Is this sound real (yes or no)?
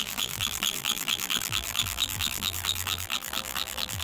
no